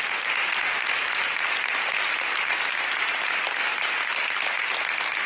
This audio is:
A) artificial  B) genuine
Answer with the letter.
B